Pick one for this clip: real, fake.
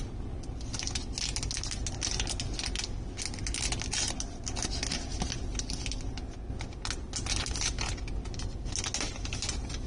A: real